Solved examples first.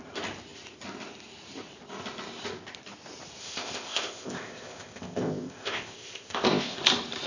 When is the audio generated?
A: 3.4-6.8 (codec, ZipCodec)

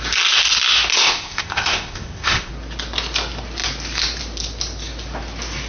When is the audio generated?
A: 0.9-2.5 (codec, ZipCodec)

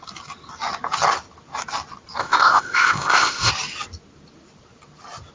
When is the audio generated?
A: 2.2-3.5 (codec, ZipCodec)

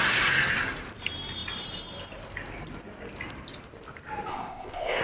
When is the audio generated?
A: 4.3-5.0 (codec, ZipCodec)

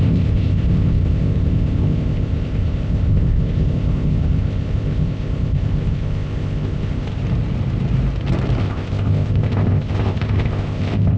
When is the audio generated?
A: 0.0-7.2 (codec, ZipCodec); 8.6-11.2